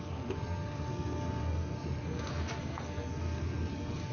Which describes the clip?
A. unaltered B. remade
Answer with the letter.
B